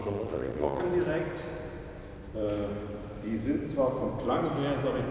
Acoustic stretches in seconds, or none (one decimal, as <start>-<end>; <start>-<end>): 0.8-5.1